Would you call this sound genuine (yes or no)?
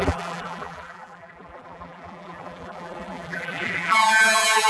no